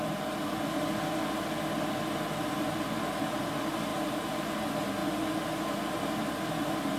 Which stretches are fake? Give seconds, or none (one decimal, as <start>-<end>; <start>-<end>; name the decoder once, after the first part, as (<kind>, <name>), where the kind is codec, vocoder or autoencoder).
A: none